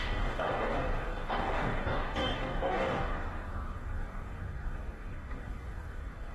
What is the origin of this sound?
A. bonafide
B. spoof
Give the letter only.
B